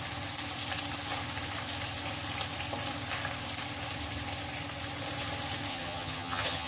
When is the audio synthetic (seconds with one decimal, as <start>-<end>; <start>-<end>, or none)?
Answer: 5.7-6.7